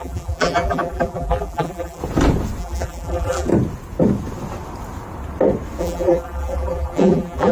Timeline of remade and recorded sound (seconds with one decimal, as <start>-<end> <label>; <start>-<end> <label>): 0.0-2.0 remade; 2.0-2.6 recorded; 2.6-3.5 remade; 3.5-5.8 recorded; 5.8-7.5 remade